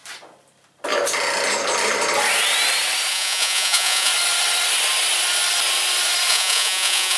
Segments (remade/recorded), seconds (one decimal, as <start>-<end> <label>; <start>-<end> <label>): 0.0-3.1 recorded; 3.1-4.1 remade; 4.1-6.3 recorded; 6.3-7.2 remade